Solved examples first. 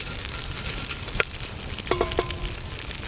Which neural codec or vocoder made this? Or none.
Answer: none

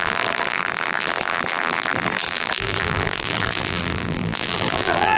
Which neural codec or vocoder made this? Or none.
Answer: vocoder, BigVGAN v2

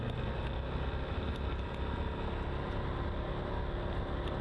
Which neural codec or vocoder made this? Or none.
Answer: none